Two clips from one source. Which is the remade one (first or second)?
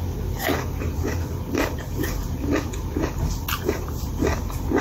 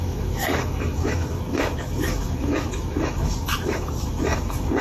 second